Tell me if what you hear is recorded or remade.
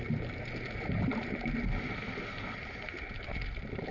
recorded